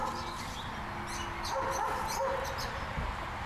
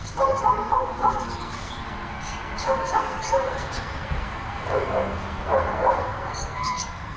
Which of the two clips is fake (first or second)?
second